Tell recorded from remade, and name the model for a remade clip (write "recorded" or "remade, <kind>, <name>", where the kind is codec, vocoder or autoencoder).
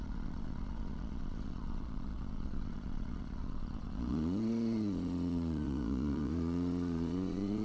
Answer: remade, vocoder, Vocos